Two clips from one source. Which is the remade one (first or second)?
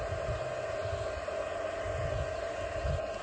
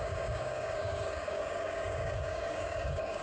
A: second